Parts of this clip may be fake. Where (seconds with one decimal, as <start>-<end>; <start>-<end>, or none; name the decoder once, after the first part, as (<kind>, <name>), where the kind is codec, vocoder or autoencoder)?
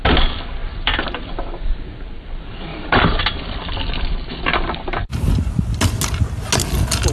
0.6-2.1 (vocoder, BigVGAN v2); 2.7-3.2; 5.1-5.6